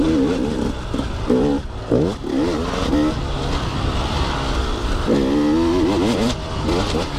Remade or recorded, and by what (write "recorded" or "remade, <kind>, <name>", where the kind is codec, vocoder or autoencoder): recorded